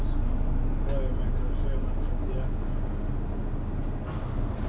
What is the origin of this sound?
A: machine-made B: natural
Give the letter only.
B